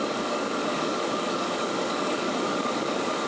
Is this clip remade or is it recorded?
remade